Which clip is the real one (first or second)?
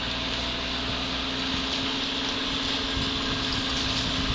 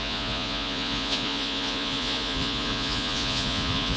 first